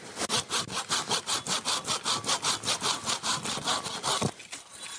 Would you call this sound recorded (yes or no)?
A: yes